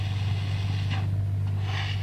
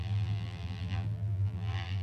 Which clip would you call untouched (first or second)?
first